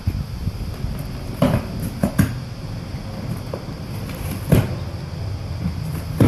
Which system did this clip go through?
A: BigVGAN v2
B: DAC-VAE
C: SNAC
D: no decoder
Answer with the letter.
D